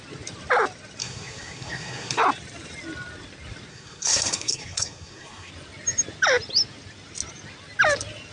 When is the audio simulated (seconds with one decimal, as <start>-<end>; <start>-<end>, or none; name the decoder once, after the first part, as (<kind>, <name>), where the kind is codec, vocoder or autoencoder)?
1.0-2.2 (codec, SNAC); 3.7-5.5